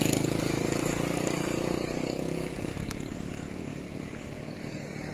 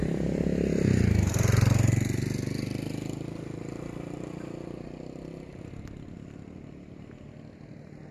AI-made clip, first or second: first